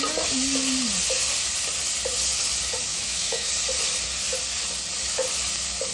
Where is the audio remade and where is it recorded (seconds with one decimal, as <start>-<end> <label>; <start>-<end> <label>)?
0.0-2.9 recorded; 2.9-3.5 remade; 3.5-5.9 recorded

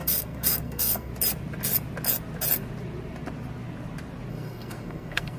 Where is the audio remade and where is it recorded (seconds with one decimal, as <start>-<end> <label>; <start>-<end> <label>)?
0.0-1.1 remade; 1.1-4.3 recorded; 4.3-5.4 remade